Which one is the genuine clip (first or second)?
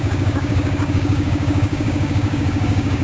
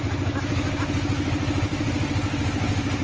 second